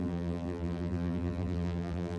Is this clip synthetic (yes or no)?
yes